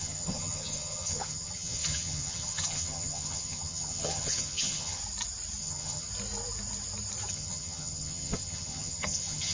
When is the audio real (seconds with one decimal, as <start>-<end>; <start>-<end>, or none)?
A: 5.0-5.6; 6.1-7.3